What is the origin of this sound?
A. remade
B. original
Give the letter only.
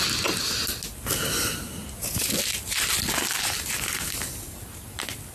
B